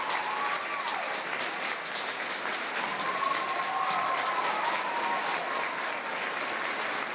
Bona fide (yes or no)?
yes